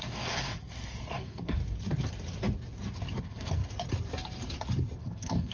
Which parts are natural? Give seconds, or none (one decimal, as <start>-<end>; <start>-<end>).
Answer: 1.6-3.2; 3.6-5.0